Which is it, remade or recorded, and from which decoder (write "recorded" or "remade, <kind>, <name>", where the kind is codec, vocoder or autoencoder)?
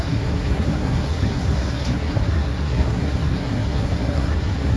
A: remade, codec, SNAC